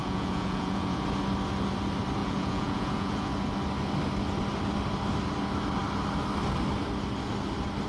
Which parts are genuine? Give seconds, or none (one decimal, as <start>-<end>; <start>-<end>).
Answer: 1.0-2.2; 3.3-7.9